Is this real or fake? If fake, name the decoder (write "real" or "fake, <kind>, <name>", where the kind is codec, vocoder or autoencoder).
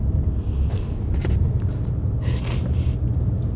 real